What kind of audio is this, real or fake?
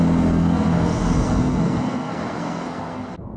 fake